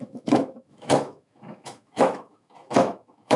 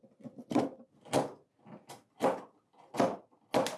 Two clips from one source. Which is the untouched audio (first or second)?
second